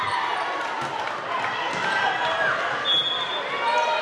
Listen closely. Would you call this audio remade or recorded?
recorded